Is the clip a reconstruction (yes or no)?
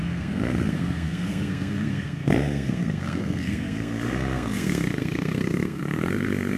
yes